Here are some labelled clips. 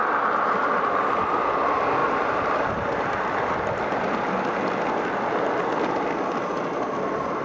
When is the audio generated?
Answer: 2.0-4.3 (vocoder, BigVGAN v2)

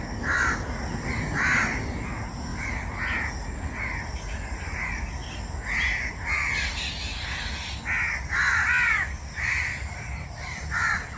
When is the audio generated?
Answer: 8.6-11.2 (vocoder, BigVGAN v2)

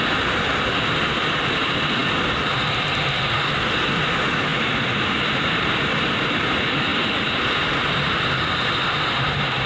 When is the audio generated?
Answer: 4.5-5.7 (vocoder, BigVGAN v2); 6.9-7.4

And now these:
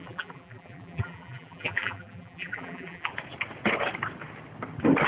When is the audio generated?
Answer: 0.0-3.1 (vocoder, BigVGAN v2)